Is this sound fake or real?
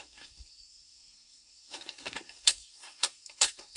fake